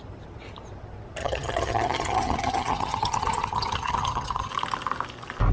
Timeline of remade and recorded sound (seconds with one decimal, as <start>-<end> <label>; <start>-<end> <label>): 0.0-1.2 recorded; 1.2-4.5 remade; 4.5-5.5 recorded